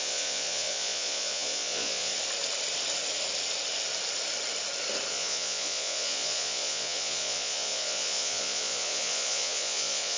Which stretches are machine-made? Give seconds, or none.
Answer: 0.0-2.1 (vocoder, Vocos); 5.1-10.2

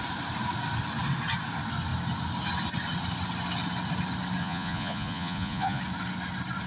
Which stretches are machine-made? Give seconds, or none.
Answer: 4.4-5.8 (vocoder, Vocos)

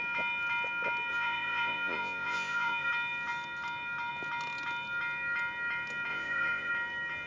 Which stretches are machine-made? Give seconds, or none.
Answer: 1.1-2.9 (vocoder, Vocos); 6.1-6.7

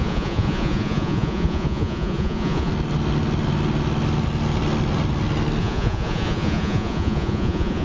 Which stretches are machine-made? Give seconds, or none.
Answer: 0.0-2.7 (vocoder, Vocos); 5.6-7.8

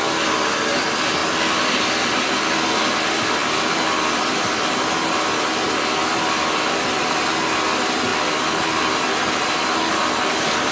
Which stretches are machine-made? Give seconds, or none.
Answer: none